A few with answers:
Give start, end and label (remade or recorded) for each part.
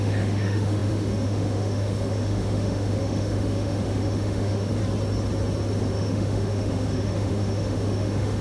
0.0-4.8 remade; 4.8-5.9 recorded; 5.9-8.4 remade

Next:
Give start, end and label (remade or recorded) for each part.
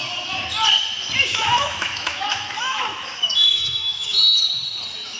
0.0-1.3 recorded; 1.3-4.4 remade; 4.4-5.2 recorded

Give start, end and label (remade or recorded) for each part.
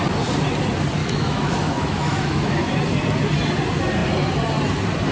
0.0-1.0 recorded; 1.0-2.7 remade; 2.7-5.1 recorded